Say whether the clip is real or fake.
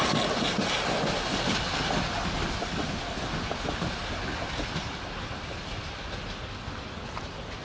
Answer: real